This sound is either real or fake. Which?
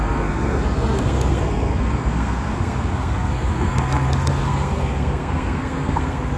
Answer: fake